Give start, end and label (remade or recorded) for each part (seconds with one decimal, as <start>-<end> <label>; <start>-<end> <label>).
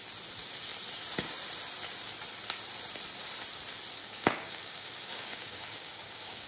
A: 0.0-4.0 recorded; 4.0-6.5 remade